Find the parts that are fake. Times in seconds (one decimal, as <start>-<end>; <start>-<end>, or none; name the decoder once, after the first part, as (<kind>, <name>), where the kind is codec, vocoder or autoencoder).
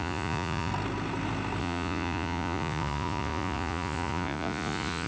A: 0.0-0.7 (vocoder, Vocos); 1.6-5.1